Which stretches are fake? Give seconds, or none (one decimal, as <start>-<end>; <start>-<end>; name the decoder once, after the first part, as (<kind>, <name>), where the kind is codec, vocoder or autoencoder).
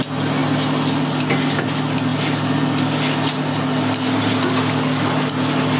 none